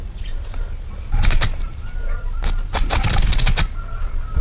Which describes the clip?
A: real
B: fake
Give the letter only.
A